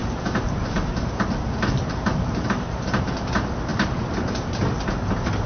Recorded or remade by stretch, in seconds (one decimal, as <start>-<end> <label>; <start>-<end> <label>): 0.0-3.3 remade; 3.3-5.5 recorded